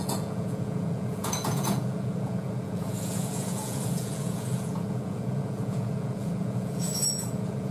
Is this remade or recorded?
remade